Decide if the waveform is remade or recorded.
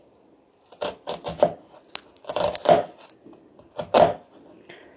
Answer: recorded